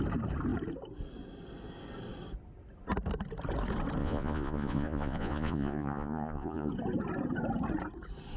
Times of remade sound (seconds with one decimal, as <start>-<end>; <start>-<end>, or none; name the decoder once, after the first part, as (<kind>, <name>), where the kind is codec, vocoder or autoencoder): 4.0-6.7 (vocoder, Vocos)